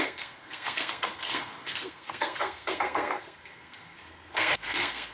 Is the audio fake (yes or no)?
yes